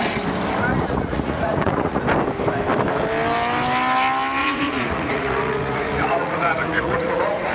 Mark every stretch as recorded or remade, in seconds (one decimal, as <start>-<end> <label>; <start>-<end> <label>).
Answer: 0.0-0.7 recorded; 0.7-2.0 remade; 2.0-4.4 recorded; 4.4-7.5 remade